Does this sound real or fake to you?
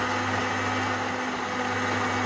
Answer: real